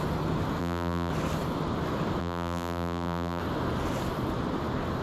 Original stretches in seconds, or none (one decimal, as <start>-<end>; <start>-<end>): 0.0-0.6; 1.1-2.2; 3.4-5.0